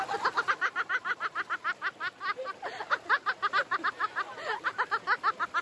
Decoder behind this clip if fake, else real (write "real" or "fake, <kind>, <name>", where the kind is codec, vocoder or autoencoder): real